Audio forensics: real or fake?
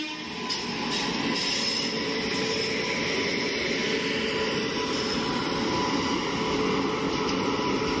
real